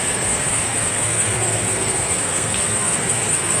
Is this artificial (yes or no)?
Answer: yes